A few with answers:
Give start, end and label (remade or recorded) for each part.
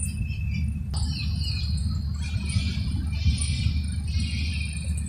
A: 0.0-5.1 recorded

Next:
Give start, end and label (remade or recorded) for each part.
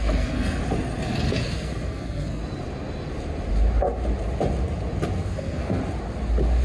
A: 0.0-0.6 remade; 0.6-1.3 recorded; 1.3-2.4 remade; 2.4-5.2 recorded; 5.2-5.8 remade; 5.8-6.6 recorded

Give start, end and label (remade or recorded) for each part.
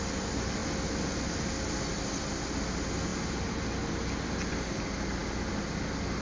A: 0.0-6.2 recorded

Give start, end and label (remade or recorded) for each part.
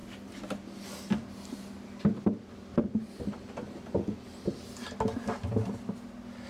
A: 0.0-6.5 recorded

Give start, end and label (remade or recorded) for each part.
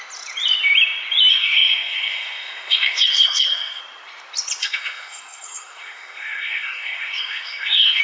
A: 0.0-1.3 recorded; 1.3-3.8 remade; 3.8-4.6 recorded; 4.6-8.0 remade